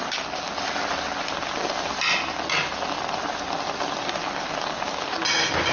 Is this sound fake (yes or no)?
no